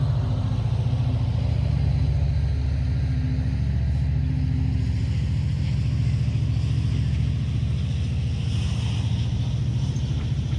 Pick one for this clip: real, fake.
real